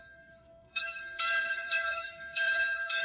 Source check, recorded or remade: remade